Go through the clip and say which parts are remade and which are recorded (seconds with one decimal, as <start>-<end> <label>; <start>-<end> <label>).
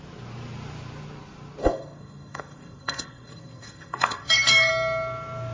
0.0-1.6 recorded; 1.6-4.7 remade; 4.7-5.5 recorded